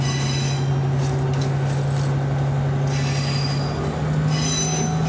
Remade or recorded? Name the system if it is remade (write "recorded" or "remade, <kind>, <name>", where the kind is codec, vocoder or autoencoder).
recorded